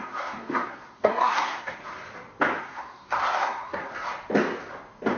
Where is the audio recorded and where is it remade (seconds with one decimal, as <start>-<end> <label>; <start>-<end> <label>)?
0.0-1.8 remade; 1.8-2.6 recorded; 2.6-3.9 remade; 3.9-5.2 recorded